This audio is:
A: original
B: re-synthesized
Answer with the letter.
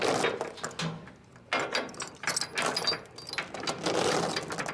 A